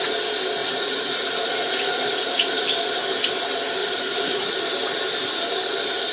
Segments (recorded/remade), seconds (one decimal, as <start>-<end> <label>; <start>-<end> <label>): 0.0-0.6 recorded; 0.6-2.6 remade; 2.6-3.8 recorded; 3.8-4.5 remade; 4.5-6.1 recorded